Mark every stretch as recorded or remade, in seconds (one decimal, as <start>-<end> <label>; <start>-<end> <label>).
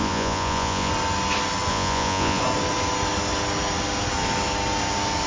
0.0-0.9 remade; 0.9-1.7 recorded; 1.7-2.4 remade; 2.4-5.3 recorded